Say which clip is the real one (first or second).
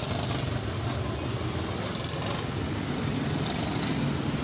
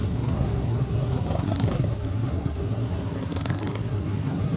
first